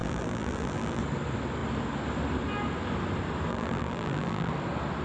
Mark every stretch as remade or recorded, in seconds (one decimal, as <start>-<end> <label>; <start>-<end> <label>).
0.0-1.0 remade; 1.0-3.5 recorded; 3.5-4.5 remade; 4.5-5.0 recorded